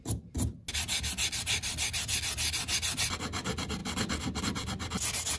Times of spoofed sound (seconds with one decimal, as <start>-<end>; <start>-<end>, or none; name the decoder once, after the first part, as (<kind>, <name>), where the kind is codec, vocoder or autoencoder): none